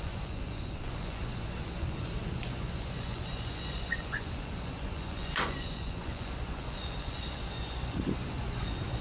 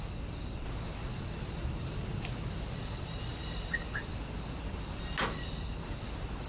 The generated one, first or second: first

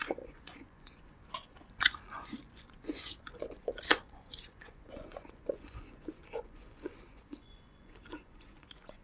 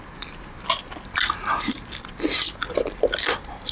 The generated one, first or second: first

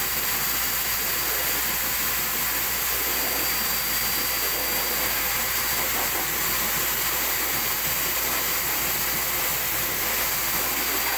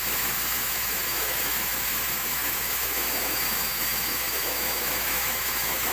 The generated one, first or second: second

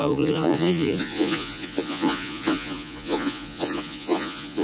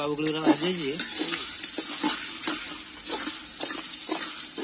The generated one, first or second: first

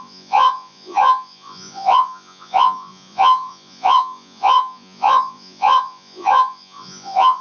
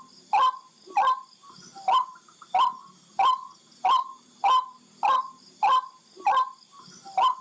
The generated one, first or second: first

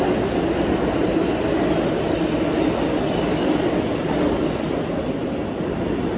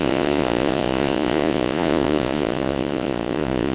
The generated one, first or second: second